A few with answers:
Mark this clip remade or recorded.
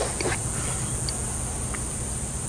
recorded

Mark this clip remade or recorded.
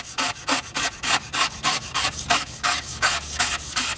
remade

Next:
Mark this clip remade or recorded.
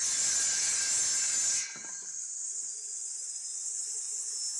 recorded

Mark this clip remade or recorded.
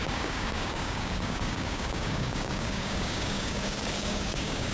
remade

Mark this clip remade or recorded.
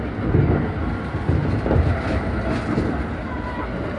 recorded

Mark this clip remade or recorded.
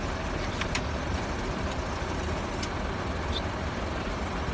recorded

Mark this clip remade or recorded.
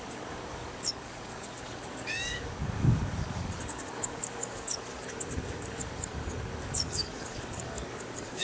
remade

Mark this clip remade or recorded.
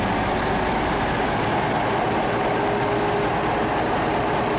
recorded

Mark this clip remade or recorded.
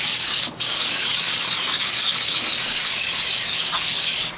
remade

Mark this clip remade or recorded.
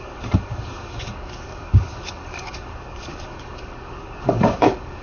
remade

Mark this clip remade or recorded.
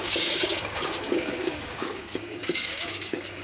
remade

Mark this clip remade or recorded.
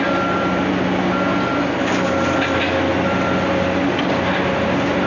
recorded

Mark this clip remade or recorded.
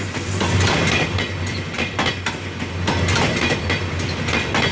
recorded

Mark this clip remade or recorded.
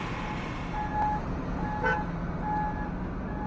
recorded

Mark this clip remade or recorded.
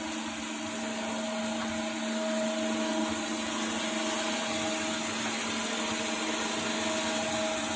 recorded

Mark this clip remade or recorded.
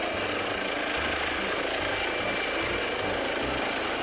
recorded